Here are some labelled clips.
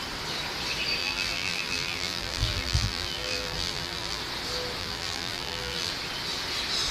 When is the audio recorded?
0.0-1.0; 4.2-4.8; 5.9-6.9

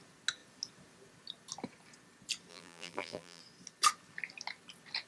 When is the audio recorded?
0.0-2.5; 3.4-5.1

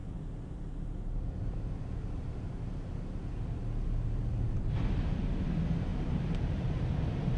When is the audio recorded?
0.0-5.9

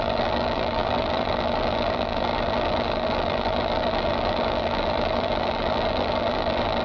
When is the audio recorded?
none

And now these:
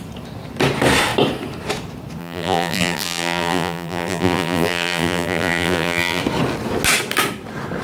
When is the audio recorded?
0.0-2.2; 6.2-7.8